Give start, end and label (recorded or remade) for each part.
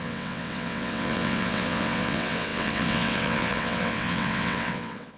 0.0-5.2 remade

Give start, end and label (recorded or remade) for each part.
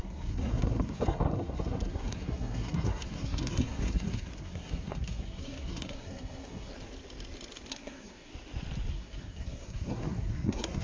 0.0-6.7 remade; 6.7-7.7 recorded; 7.7-8.3 remade; 8.3-8.9 recorded; 8.9-10.8 remade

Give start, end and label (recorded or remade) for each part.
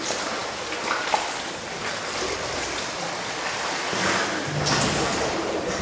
0.0-5.8 recorded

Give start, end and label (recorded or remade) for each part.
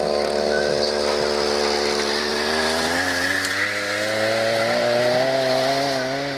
0.0-6.4 recorded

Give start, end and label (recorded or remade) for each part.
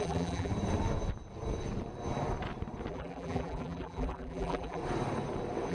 0.0-0.5 remade; 0.5-2.9 recorded; 2.9-4.8 remade; 4.8-5.7 recorded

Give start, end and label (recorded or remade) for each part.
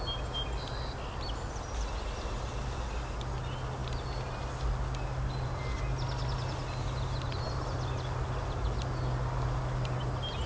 0.0-10.5 recorded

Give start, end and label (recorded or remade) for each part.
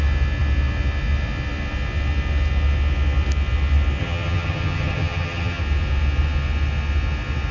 0.0-4.0 recorded; 4.0-5.6 remade; 5.6-7.5 recorded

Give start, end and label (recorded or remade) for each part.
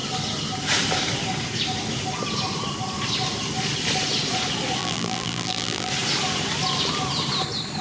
0.0-4.8 recorded; 4.8-5.9 remade; 5.9-7.8 recorded